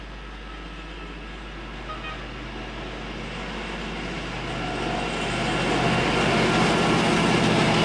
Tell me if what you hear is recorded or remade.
recorded